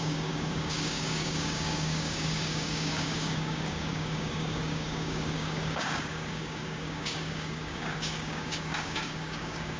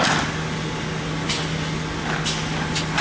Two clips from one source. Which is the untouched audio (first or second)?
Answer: second